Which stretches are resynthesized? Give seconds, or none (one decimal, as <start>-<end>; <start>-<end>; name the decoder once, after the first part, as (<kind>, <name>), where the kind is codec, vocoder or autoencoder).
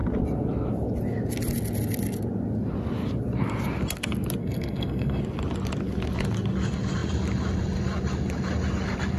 4.4-5.2 (codec, SNAC)